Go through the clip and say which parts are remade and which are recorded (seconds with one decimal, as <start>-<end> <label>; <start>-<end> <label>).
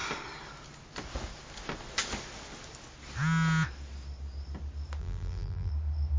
0.0-5.0 recorded; 5.0-5.7 remade; 5.7-6.2 recorded